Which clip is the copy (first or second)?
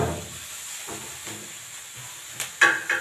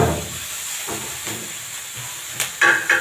second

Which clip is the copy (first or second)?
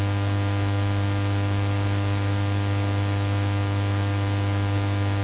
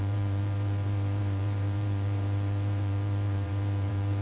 second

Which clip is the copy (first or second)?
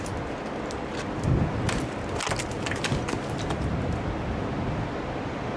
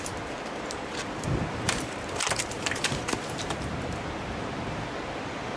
second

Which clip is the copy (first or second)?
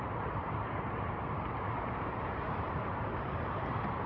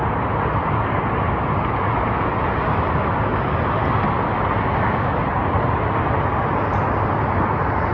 first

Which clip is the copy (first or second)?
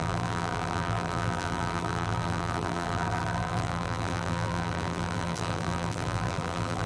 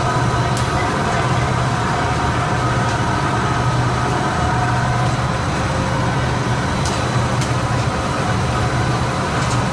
first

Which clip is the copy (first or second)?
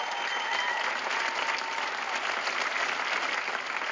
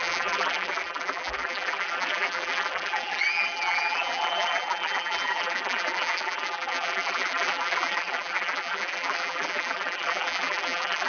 second